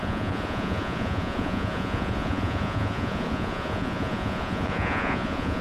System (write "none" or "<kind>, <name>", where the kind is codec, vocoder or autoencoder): vocoder, Vocos